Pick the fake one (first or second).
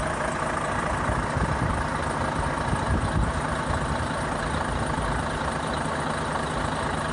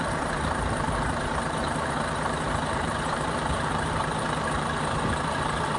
second